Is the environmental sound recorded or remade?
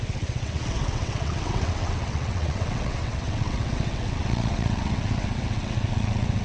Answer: remade